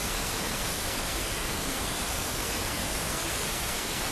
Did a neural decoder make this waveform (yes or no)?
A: yes